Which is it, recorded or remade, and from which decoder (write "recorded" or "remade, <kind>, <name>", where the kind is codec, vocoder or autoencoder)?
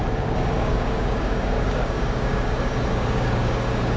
remade, codec, DAC